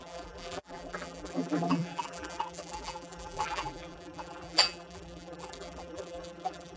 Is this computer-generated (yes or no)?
yes